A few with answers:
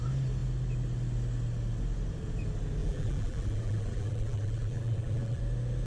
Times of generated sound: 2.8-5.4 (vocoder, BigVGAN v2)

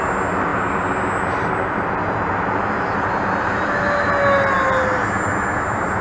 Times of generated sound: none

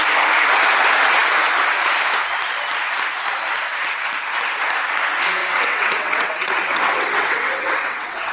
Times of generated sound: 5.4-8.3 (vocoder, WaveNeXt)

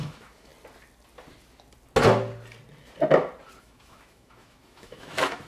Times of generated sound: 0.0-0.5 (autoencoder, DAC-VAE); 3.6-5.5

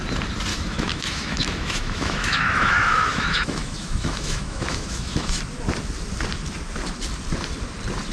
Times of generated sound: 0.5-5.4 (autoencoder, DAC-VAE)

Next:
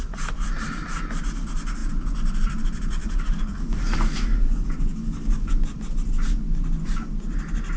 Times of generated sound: 3.0-5.5 (codec, DAC)